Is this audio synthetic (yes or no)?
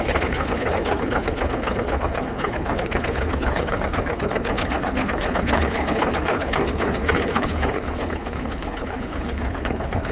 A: yes